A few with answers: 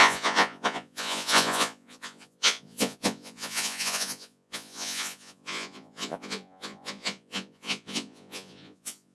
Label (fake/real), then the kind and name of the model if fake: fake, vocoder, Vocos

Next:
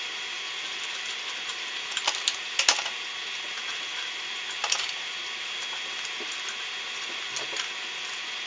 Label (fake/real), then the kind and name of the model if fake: real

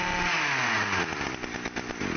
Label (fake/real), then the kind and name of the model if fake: real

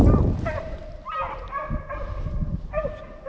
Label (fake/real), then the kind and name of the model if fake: real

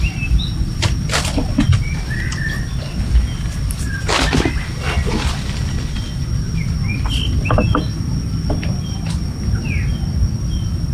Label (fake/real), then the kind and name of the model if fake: real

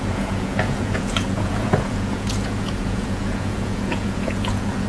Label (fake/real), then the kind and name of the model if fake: fake, vocoder, Vocos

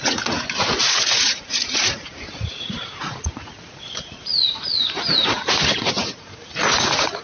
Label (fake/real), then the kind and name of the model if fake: fake, vocoder, Vocos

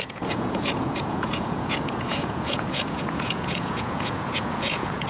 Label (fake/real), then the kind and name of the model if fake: fake, vocoder, Vocos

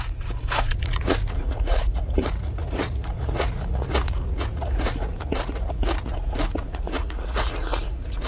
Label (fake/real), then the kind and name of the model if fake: fake, vocoder, Vocos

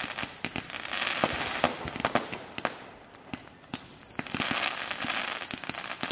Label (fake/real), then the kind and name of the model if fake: real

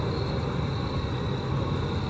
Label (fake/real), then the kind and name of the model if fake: real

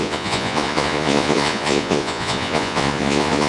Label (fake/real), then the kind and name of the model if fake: fake, vocoder, Vocos